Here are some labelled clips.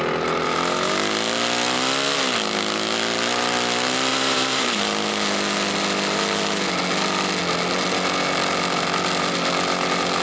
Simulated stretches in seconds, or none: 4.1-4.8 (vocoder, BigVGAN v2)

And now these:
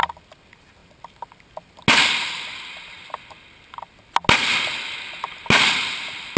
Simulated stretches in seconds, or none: none

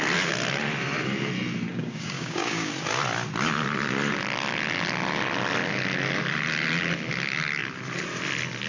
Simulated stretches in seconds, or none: 1.7-2.7 (codec, DAC)